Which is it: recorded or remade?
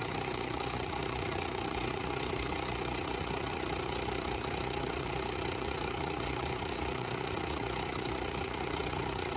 remade